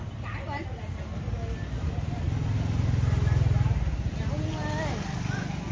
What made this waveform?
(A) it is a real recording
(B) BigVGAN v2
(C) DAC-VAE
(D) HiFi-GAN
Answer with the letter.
A